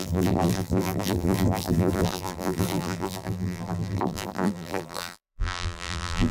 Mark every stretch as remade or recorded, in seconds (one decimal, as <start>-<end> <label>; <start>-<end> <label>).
0.0-6.3 remade